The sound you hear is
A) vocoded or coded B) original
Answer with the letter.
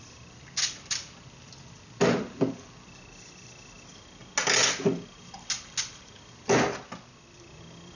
B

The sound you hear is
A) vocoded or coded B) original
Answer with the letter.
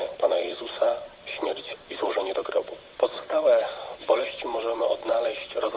A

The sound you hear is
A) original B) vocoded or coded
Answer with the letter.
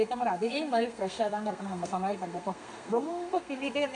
B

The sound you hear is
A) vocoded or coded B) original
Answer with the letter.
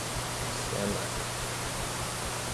B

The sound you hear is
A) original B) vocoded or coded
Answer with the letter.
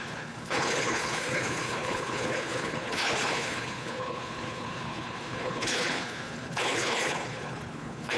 B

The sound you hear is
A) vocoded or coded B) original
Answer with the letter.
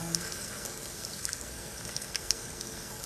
A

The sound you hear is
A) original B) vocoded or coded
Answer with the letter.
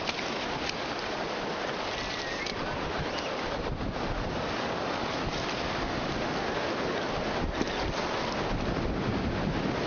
A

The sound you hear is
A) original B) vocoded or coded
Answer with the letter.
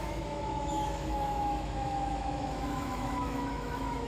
B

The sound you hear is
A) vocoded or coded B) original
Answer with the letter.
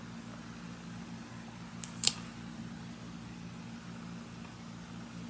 B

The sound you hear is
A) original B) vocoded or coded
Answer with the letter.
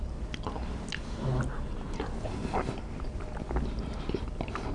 A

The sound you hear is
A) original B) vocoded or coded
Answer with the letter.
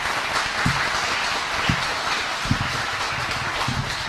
A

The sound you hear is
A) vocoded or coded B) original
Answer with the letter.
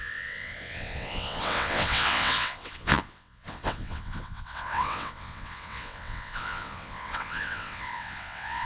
A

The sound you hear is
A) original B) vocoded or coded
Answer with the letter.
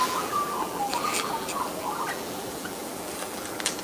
B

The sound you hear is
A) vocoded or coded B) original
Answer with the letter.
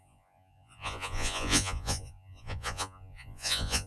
A